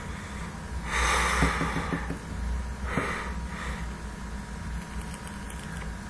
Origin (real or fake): real